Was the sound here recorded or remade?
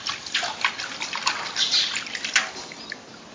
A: recorded